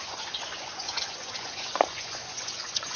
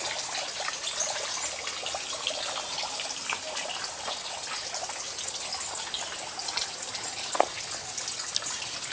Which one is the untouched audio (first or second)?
second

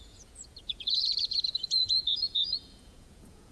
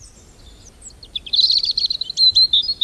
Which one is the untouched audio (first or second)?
second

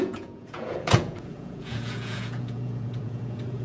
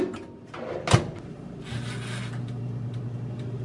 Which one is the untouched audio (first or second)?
second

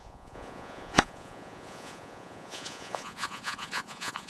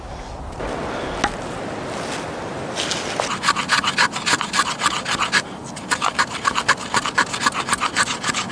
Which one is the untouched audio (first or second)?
second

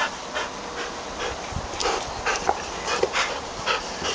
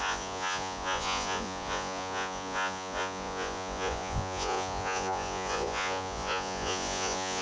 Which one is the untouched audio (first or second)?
first